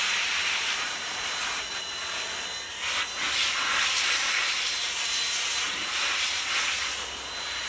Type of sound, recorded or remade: recorded